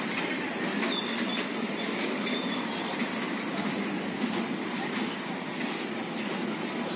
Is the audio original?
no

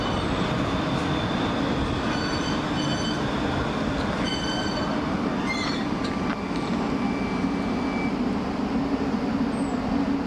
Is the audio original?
yes